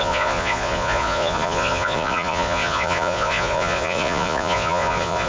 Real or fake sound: fake